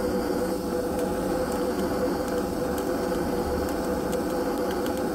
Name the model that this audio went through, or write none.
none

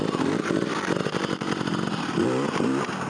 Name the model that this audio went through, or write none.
none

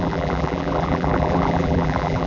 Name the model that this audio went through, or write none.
vocoder, BigVGAN v2